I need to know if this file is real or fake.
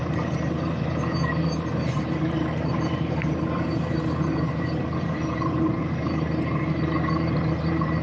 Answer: fake